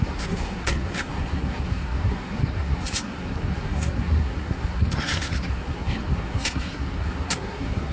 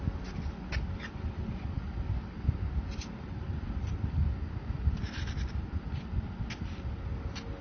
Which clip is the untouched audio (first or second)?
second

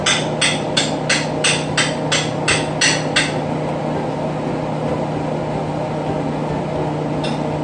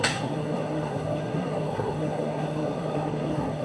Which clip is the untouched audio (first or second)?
first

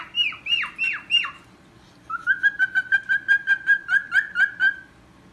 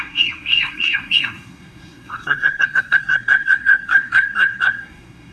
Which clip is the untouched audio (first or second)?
first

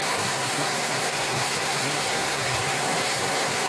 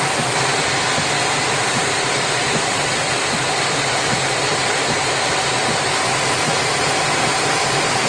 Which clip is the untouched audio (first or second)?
second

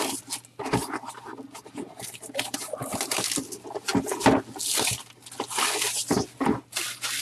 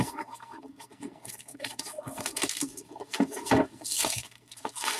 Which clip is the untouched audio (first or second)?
first